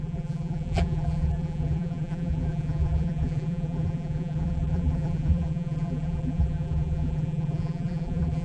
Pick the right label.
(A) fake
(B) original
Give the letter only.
A